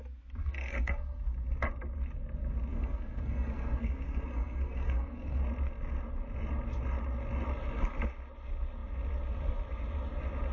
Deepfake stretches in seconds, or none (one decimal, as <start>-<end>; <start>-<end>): 0.4-1.2; 2.7-5.4